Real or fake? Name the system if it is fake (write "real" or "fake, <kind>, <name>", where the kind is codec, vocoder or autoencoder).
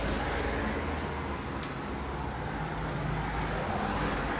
real